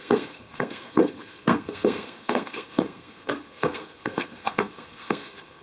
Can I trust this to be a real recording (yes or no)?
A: no